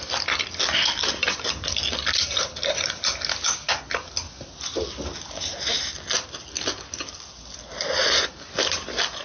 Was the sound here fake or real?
real